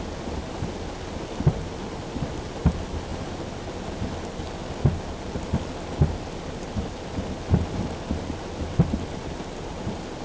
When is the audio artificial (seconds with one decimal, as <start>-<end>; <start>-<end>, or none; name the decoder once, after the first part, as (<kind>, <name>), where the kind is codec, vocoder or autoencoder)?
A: none